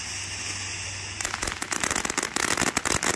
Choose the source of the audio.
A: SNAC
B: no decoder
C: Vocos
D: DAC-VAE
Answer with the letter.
B